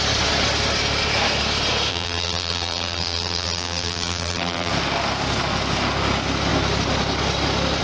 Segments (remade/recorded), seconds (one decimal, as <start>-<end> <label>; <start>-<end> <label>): 0.0-1.9 recorded; 1.9-4.7 remade; 4.7-7.8 recorded